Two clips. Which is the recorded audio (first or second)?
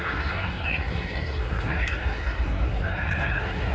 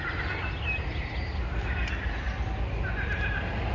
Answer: second